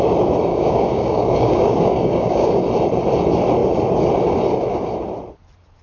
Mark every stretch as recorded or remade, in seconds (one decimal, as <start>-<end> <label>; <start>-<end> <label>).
0.0-0.5 recorded; 0.5-2.6 remade; 2.6-5.8 recorded